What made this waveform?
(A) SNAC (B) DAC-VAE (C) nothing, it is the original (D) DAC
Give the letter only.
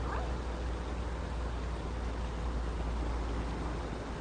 C